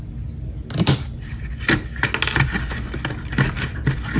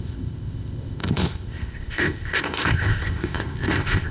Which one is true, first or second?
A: first